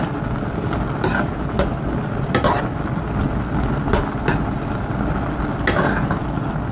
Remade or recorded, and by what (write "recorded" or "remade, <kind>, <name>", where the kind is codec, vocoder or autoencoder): recorded